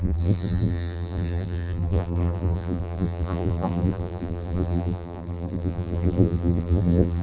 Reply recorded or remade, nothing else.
remade